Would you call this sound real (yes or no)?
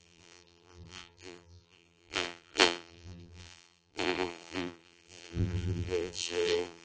no